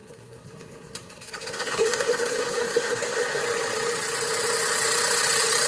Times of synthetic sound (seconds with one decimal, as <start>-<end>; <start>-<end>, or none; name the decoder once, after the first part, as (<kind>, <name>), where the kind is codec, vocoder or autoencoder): 0.0-3.4 (codec, SNAC)